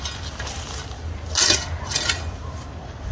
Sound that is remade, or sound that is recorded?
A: recorded